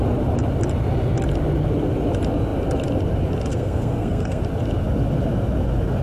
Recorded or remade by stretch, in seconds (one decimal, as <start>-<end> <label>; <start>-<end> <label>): 0.0-3.5 recorded; 3.5-4.4 remade; 4.4-6.0 recorded